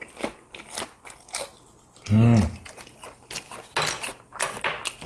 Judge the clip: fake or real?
real